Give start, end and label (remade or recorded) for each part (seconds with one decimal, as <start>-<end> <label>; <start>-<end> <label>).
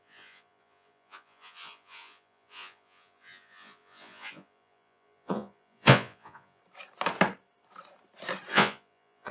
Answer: 0.0-6.6 remade; 6.6-8.5 recorded; 8.5-9.3 remade